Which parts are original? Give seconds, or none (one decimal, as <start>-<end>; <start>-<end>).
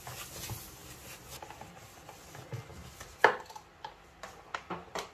0.0-5.1